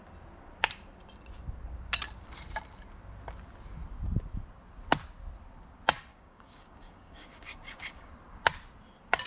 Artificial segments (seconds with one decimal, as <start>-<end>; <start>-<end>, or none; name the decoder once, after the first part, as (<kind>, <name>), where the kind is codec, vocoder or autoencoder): 6.1-8.1 (codec, DAC)